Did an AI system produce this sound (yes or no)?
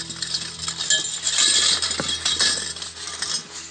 no